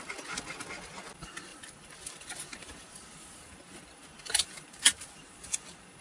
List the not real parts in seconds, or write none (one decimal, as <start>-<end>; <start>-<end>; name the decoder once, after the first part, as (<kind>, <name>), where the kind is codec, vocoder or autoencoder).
1.5-5.1 (vocoder, BigVGAN v2)